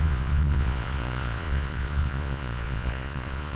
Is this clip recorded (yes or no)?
no